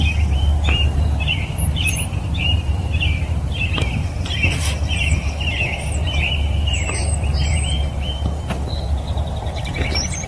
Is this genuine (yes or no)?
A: no